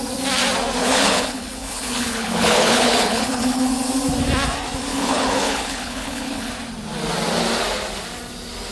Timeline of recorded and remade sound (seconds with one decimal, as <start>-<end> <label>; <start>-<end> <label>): 0.0-0.8 recorded; 0.8-3.7 remade; 3.7-4.9 recorded; 4.9-6.5 remade; 6.5-8.7 recorded